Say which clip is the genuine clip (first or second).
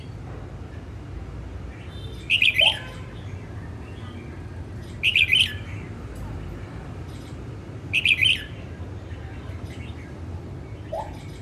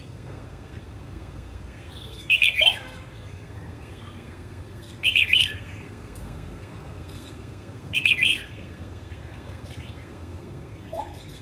first